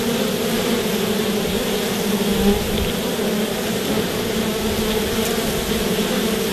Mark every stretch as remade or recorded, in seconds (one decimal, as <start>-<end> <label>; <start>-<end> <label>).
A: 0.0-6.5 recorded